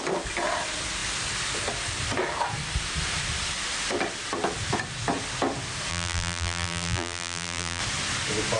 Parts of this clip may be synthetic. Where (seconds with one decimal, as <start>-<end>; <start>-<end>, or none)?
5.9-7.8